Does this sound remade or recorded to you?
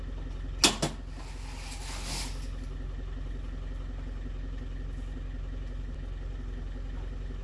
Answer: recorded